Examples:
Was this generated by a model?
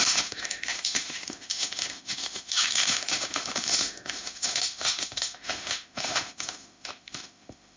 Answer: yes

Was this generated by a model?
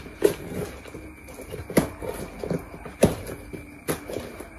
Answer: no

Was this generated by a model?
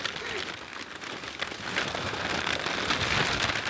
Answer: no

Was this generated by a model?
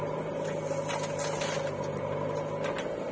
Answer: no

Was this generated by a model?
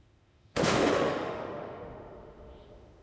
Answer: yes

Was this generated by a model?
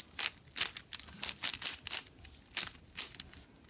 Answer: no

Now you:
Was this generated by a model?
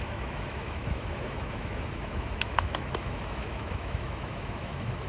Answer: yes